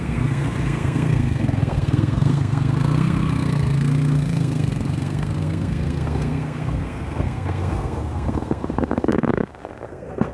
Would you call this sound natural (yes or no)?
no